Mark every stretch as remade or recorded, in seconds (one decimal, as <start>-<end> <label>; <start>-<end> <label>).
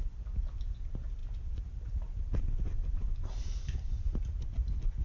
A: 0.0-5.0 recorded